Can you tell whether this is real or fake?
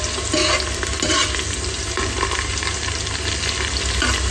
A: real